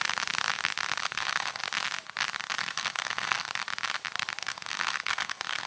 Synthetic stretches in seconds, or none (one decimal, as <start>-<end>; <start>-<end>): 1.0-1.6; 2.6-3.5; 4.4-5.7